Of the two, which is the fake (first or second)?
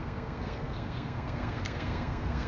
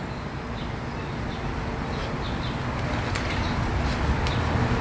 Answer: first